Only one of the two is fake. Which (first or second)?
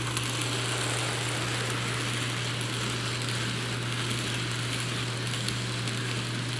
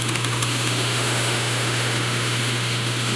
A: second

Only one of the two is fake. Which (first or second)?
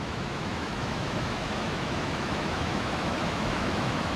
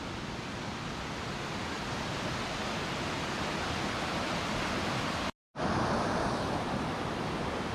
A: first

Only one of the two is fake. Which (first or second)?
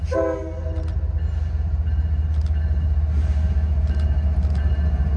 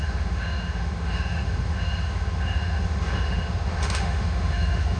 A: second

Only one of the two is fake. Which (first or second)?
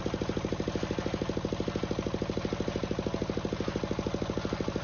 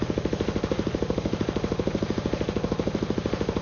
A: second